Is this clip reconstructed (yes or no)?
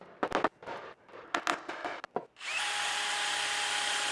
no